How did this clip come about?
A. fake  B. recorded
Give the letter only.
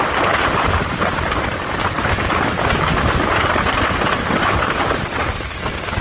B